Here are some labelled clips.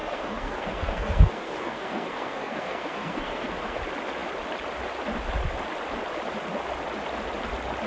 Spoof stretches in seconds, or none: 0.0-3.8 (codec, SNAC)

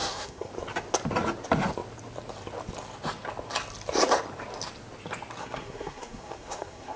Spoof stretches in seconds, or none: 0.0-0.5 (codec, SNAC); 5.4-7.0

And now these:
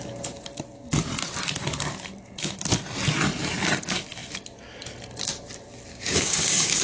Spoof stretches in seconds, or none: 5.9-6.8 (codec, DAC)

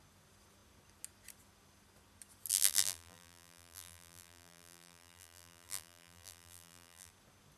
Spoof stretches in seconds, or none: 2.5-7.1 (vocoder, BigVGAN v2)

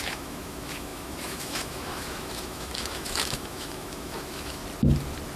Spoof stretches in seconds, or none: 0.0-4.6 (autoencoder, DAC-VAE)

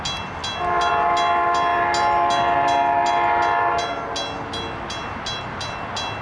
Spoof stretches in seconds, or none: none

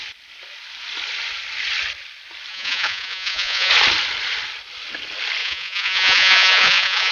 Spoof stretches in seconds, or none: 2.5-3.7 (vocoder, Vocos); 5.4-7.1